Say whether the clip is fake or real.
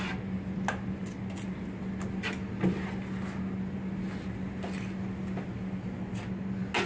real